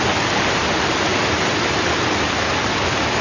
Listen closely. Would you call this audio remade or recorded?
recorded